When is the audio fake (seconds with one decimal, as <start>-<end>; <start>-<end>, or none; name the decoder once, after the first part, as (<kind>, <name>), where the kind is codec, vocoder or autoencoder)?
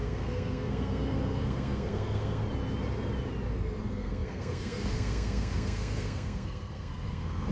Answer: 0.0-2.4 (codec, SNAC); 3.8-7.5